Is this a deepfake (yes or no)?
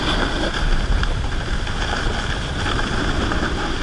no